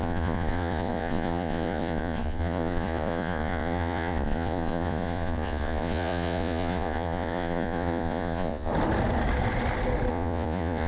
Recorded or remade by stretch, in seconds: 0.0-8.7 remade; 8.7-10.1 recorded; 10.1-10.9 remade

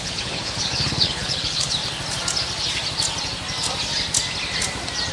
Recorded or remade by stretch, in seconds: 0.0-1.8 remade; 1.8-5.1 recorded

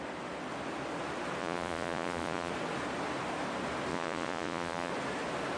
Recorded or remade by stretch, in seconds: 0.0-1.4 recorded; 1.4-2.5 remade; 2.5-3.9 recorded; 3.9-4.9 remade; 4.9-5.6 recorded

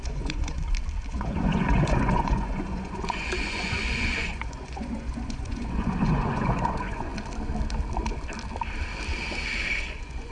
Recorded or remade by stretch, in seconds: 0.0-0.6 remade; 0.6-1.1 recorded; 1.1-7.1 remade; 7.1-9.8 recorded; 9.8-10.3 remade

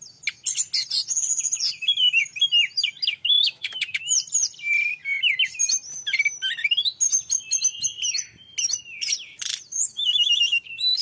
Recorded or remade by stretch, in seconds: 0.0-3.1 recorded; 3.1-4.1 remade; 4.1-9.9 recorded; 9.9-11.0 remade

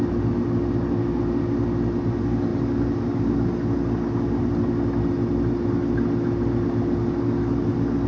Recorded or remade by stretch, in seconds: 0.0-8.1 recorded